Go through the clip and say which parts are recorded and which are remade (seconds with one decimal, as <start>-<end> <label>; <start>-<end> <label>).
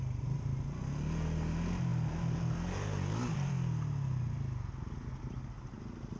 0.0-6.2 recorded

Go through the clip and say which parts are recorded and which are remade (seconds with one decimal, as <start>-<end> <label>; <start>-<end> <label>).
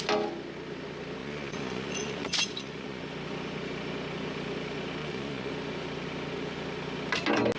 0.0-1.2 recorded; 1.2-3.0 remade; 3.0-5.0 recorded; 5.0-5.5 remade; 5.5-7.6 recorded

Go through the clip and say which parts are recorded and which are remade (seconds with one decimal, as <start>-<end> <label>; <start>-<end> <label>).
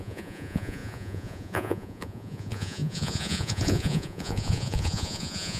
0.0-5.6 remade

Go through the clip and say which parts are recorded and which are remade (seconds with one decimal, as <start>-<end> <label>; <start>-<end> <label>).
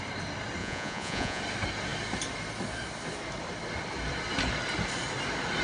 0.0-0.6 recorded; 0.6-1.4 remade; 1.4-5.6 recorded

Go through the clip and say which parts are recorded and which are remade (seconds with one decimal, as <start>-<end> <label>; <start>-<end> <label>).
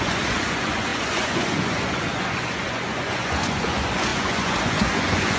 0.0-5.4 remade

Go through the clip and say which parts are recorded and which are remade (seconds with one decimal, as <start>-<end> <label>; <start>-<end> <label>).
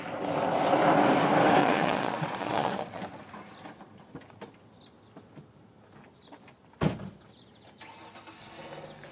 0.0-1.6 recorded; 1.6-3.0 remade; 3.0-9.1 recorded